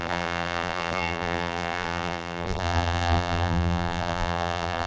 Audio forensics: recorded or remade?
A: remade